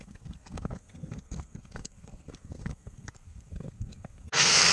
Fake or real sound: fake